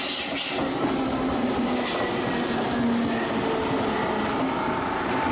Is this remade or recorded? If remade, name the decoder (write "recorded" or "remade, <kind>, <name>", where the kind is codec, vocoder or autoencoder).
recorded